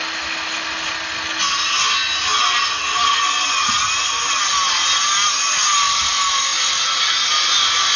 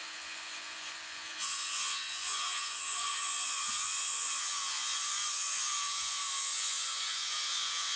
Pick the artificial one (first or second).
second